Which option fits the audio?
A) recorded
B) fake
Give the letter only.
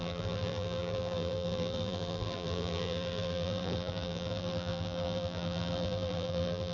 B